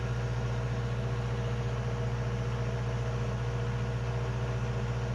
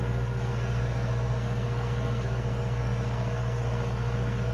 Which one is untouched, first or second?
first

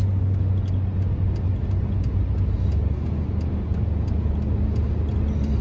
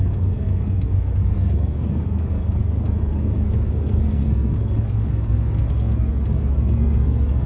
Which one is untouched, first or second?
first